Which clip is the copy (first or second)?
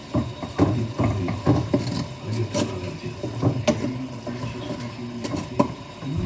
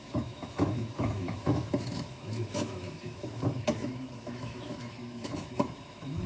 second